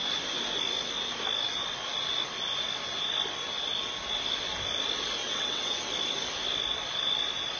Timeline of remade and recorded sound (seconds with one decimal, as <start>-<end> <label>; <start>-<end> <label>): 0.0-5.2 recorded; 5.2-5.8 remade; 5.8-7.6 recorded